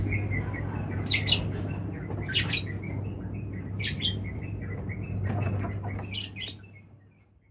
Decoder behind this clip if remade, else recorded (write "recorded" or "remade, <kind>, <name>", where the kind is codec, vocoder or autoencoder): recorded